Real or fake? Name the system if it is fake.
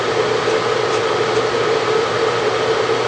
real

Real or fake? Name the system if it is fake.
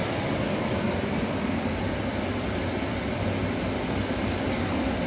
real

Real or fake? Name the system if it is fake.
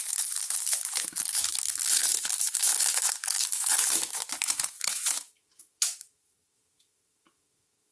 fake, autoencoder, DAC-VAE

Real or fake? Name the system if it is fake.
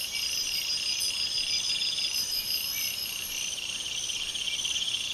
real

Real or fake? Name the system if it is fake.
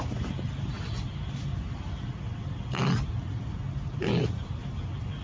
real